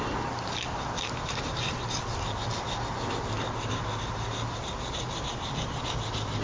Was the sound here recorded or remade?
recorded